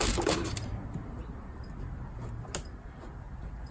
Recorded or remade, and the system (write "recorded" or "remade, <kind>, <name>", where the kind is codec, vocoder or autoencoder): recorded